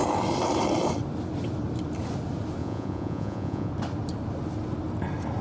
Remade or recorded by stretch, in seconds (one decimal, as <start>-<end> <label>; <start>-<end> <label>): 0.0-2.6 recorded; 2.6-3.7 remade; 3.7-5.4 recorded